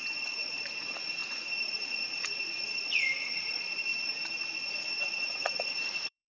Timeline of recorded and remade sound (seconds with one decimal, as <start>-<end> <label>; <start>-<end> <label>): 0.0-3.9 remade; 3.9-5.0 recorded; 5.0-6.4 remade